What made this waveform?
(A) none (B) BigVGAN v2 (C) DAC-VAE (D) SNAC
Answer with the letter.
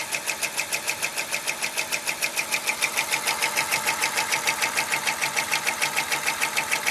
A